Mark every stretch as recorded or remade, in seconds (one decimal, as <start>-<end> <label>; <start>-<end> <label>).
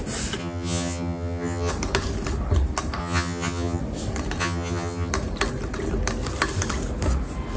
0.0-0.4 recorded; 0.4-1.7 remade; 1.7-3.0 recorded; 3.0-3.8 remade; 3.8-4.4 recorded; 4.4-5.1 remade; 5.1-7.6 recorded